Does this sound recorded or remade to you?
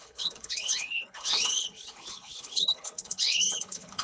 remade